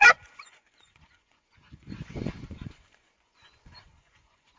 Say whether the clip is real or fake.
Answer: fake